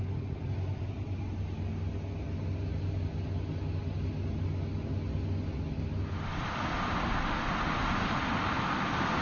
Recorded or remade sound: recorded